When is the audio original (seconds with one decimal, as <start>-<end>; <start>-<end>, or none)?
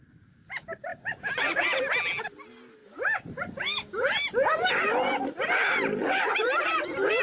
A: 0.0-0.9; 1.9-6.0; 6.8-7.2